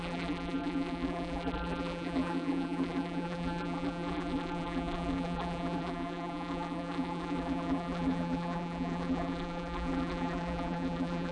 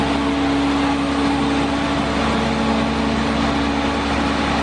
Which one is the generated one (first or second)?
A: first